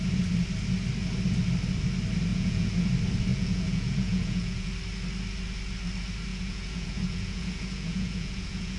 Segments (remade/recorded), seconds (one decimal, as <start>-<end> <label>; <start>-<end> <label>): 0.0-2.3 recorded; 2.3-2.9 remade; 2.9-3.3 recorded; 3.3-4.7 remade; 4.7-6.3 recorded; 6.3-8.8 remade